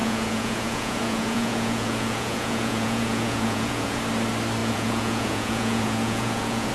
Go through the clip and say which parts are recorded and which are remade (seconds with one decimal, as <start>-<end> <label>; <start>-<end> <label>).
0.0-4.0 remade; 4.0-4.6 recorded; 4.6-6.7 remade